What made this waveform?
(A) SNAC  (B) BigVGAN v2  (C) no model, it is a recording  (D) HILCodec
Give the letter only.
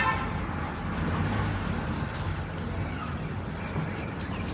C